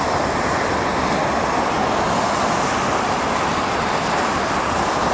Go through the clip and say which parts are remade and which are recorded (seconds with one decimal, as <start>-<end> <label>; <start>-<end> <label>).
0.0-0.9 remade; 0.9-3.7 recorded; 3.7-5.1 remade